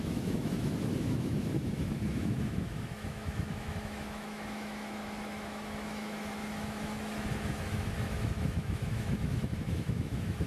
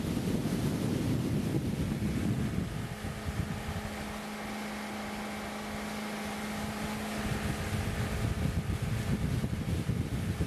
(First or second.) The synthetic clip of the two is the first